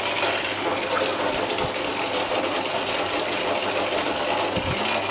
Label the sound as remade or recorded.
recorded